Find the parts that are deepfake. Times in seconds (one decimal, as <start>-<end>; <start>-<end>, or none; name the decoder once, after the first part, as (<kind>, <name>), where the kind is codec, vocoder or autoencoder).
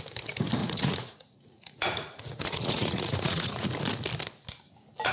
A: 0.6-3.7 (vocoder, Vocos)